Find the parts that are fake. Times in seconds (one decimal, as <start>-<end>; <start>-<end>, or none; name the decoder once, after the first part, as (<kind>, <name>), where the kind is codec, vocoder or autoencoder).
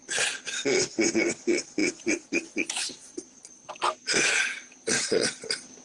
1.8-3.7 (vocoder, BigVGAN v2)